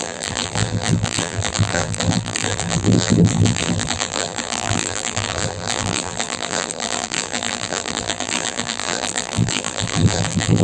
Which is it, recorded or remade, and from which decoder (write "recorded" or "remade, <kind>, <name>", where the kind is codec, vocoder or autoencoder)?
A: remade, vocoder, BigVGAN v2